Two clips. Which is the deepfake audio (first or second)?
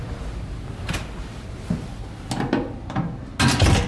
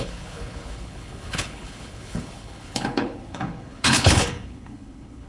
second